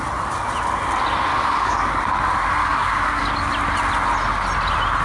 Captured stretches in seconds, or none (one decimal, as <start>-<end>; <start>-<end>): 0.0-1.3; 2.0-2.6; 3.3-5.0